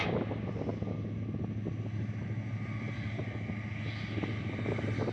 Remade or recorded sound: recorded